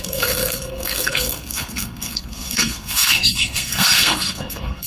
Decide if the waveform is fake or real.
fake